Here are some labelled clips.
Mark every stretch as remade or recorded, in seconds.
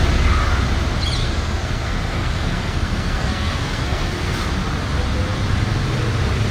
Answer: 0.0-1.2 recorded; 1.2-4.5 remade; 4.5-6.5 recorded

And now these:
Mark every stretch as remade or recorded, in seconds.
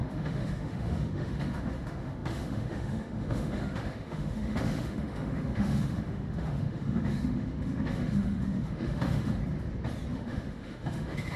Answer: 0.0-9.4 remade; 9.4-10.1 recorded; 10.1-11.4 remade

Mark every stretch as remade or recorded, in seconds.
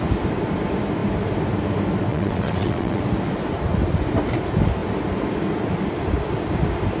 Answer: 0.0-2.1 recorded; 2.1-3.0 remade; 3.0-7.0 recorded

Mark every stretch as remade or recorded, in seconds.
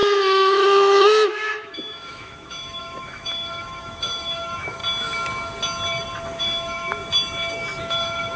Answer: 0.0-4.8 remade; 4.8-6.4 recorded; 6.4-7.0 remade; 7.0-7.8 recorded; 7.8-8.4 remade